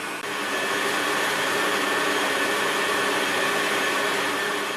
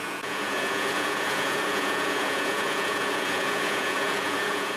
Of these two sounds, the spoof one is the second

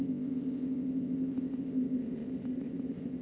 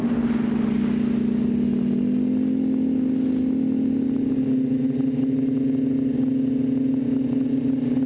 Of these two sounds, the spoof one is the first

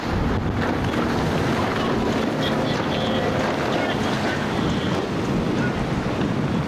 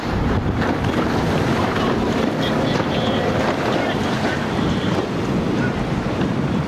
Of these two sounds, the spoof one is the second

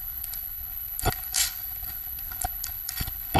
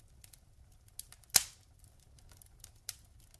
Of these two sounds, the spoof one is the first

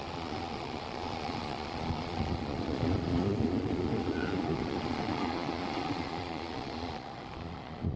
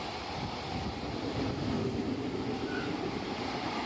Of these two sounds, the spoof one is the first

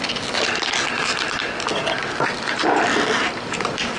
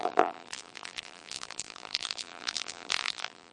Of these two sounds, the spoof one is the second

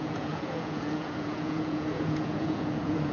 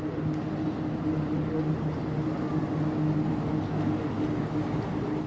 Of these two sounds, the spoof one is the first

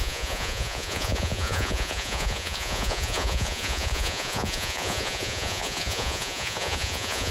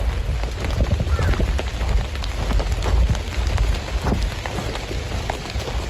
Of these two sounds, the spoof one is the first